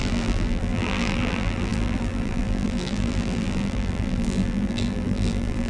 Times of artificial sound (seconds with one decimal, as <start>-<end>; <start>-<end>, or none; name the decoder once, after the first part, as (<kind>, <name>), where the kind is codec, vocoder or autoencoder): 0.0-5.7 (vocoder, BigVGAN v2)